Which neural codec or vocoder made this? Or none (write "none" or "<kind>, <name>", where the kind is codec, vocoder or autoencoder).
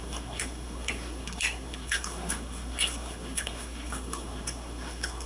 codec, SNAC